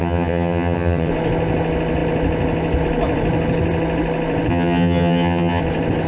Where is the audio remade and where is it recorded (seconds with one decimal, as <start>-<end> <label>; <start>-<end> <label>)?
0.0-1.1 remade; 1.1-4.5 recorded; 4.5-5.6 remade; 5.6-6.1 recorded